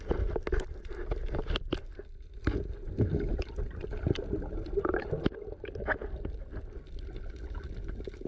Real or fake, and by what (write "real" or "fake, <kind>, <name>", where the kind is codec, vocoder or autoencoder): real